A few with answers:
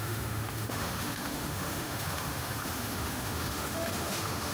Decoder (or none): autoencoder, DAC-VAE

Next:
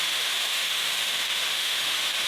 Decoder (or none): autoencoder, DAC-VAE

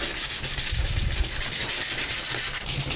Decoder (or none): none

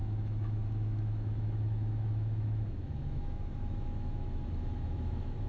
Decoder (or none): autoencoder, DAC-VAE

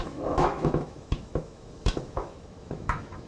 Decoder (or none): autoencoder, DAC-VAE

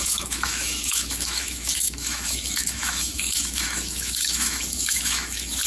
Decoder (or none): autoencoder, DAC-VAE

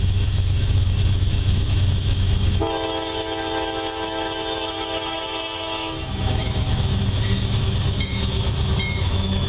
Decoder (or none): autoencoder, DAC-VAE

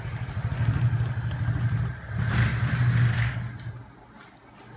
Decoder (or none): none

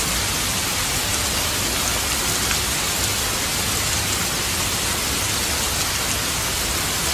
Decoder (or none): none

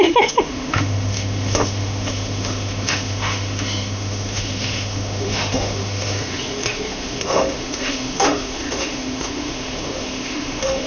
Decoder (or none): autoencoder, DAC-VAE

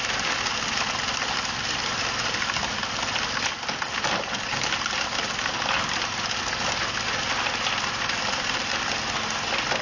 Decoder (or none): none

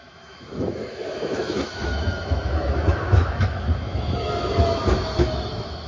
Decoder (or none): autoencoder, DAC-VAE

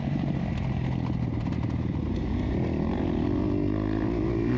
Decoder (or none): none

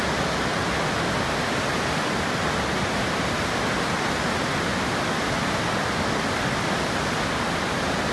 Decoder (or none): none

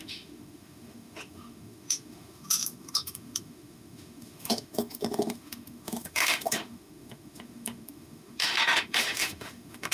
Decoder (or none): autoencoder, DAC-VAE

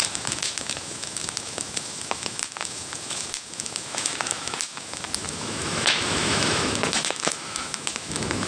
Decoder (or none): autoencoder, DAC-VAE